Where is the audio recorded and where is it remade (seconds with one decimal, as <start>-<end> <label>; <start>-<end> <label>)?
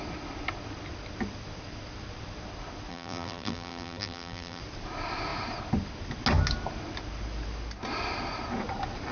0.0-2.9 recorded; 2.9-4.6 remade; 4.6-9.1 recorded